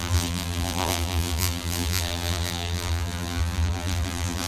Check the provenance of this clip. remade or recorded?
remade